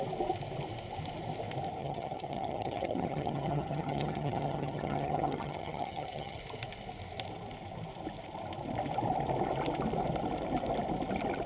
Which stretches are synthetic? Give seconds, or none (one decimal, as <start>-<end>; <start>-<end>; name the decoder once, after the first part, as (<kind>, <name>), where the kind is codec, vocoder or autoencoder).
1.8-6.4 (vocoder, HiFi-GAN)